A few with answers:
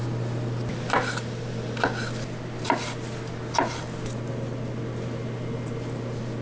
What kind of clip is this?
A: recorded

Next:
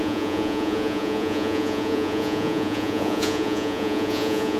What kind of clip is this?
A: remade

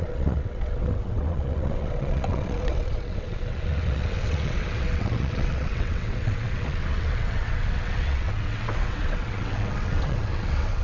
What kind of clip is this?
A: remade